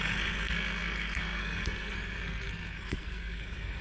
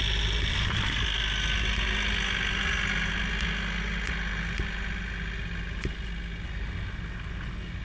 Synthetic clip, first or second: first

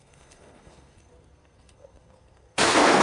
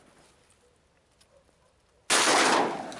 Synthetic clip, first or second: first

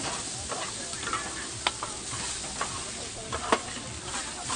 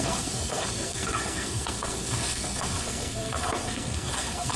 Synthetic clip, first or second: second